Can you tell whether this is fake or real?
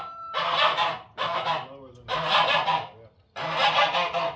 real